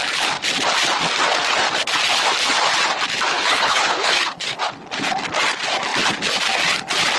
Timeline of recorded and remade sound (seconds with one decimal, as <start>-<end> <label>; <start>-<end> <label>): 0.0-3.3 recorded; 3.3-4.6 remade; 4.6-7.2 recorded